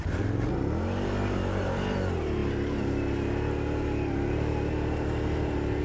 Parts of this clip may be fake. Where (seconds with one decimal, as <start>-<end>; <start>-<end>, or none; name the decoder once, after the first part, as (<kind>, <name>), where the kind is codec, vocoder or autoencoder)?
none